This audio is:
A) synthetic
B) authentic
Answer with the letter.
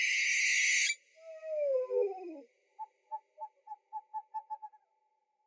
B